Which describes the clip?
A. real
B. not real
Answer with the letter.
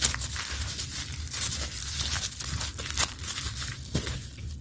A